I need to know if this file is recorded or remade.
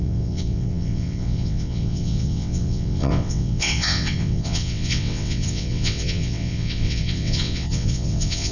remade